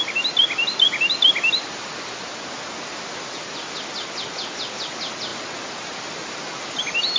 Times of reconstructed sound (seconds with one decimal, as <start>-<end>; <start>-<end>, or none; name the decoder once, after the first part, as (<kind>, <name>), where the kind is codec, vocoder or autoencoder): none